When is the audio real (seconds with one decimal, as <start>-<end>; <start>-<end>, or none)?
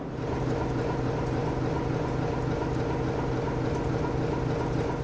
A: 0.0-5.0